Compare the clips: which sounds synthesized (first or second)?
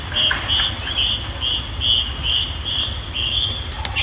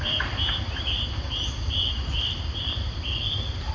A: second